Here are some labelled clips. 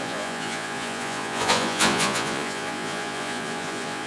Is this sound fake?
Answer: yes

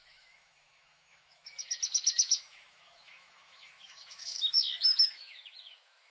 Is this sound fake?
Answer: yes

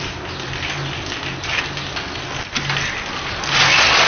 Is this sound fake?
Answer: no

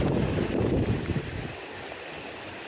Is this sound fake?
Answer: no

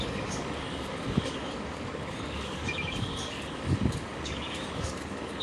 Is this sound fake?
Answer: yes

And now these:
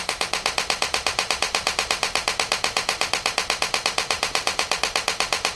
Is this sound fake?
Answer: no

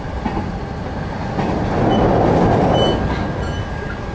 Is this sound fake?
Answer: no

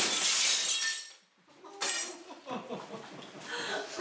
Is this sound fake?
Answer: no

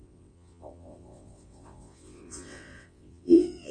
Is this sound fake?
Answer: yes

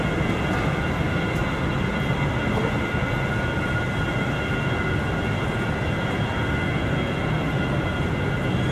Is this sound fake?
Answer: no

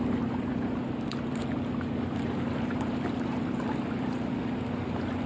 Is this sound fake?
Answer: no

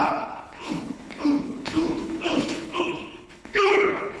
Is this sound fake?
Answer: yes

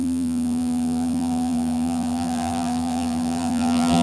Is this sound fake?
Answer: yes